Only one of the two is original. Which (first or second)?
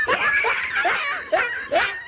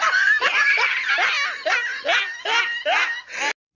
second